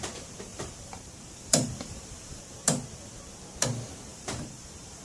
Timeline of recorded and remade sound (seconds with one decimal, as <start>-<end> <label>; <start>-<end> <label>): 0.0-0.5 recorded; 0.5-2.4 remade; 2.4-4.1 recorded; 4.1-5.0 remade

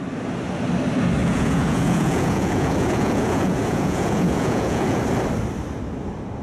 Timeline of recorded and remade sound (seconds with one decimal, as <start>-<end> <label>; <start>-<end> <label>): 0.0-1.2 recorded; 1.2-5.0 remade; 5.0-6.4 recorded

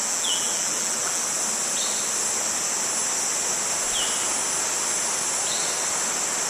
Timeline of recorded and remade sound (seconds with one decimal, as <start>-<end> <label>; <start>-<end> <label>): 0.0-1.2 remade; 1.2-6.5 recorded

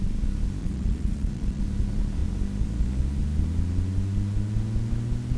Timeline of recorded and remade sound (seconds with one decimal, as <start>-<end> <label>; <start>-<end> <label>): 0.0-0.6 recorded; 0.6-1.6 remade; 1.6-5.4 recorded

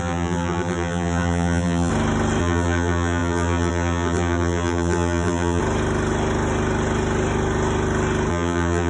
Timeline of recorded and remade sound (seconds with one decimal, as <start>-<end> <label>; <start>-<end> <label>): 0.0-1.9 remade; 1.9-2.4 recorded; 2.4-5.6 remade; 5.6-8.3 recorded; 8.3-8.9 remade

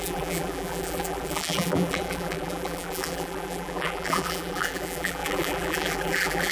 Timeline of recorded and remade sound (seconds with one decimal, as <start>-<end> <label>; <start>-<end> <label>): 0.0-6.5 remade